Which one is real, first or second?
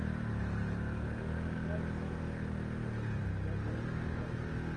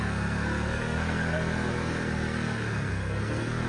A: first